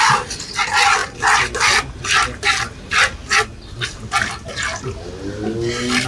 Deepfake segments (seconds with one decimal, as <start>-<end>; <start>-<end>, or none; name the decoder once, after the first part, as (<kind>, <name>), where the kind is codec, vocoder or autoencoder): none